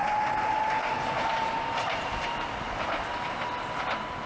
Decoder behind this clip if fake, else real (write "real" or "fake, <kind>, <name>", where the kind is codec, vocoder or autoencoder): real